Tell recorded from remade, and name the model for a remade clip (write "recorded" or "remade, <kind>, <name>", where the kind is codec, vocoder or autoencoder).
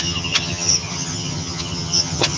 remade, vocoder, HiFi-GAN